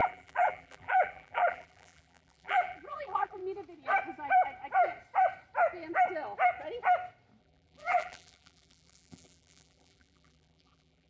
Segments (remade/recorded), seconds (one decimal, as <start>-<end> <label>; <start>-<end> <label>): 0.0-3.4 remade; 3.4-7.4 recorded; 7.4-11.1 remade